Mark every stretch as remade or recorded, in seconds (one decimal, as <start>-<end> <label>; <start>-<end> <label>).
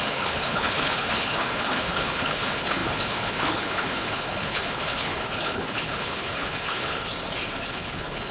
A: 0.0-7.1 remade; 7.1-7.7 recorded; 7.7-8.3 remade